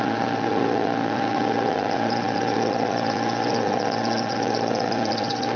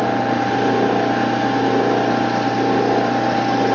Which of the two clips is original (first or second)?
second